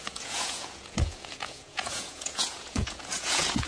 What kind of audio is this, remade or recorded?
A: remade